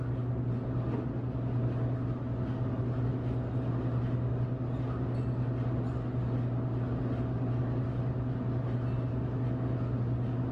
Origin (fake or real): real